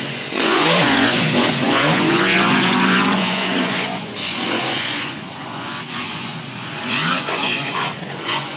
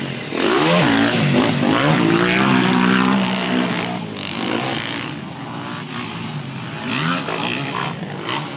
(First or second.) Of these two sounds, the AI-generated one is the first